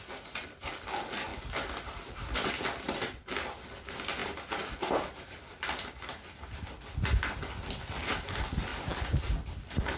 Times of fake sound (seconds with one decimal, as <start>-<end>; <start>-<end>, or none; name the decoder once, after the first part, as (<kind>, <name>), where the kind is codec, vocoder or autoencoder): none